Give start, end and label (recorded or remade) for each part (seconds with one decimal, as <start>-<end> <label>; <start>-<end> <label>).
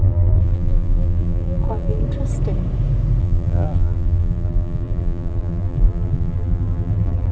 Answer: 0.0-2.0 remade; 2.0-3.2 recorded; 3.2-7.3 remade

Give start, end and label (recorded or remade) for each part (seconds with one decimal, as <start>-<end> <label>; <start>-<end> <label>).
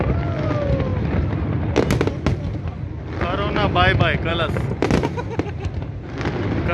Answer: 0.0-6.7 recorded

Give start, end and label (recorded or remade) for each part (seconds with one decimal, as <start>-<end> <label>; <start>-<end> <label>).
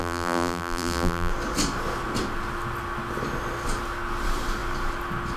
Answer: 0.0-1.3 remade; 1.3-5.4 recorded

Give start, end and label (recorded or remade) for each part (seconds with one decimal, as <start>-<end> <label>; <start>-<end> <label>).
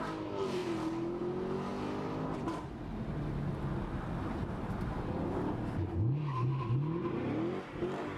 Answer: 0.0-8.2 recorded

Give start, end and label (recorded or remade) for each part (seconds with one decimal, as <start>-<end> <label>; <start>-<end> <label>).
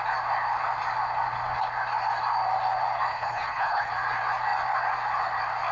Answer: 0.0-3.1 recorded; 3.1-3.9 remade; 3.9-5.7 recorded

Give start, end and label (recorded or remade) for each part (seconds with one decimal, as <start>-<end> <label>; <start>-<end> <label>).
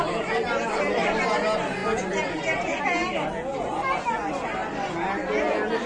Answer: 0.0-5.9 recorded